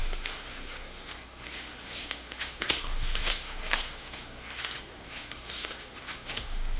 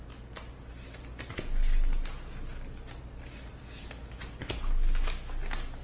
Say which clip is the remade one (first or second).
first